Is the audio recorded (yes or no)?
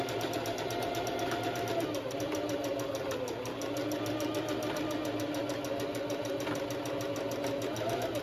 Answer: yes